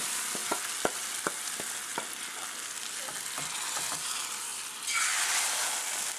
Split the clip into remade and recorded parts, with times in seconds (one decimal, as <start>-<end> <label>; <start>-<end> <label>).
0.0-0.4 remade; 0.4-1.4 recorded; 1.4-1.9 remade; 1.9-3.3 recorded; 3.3-4.5 remade; 4.5-6.2 recorded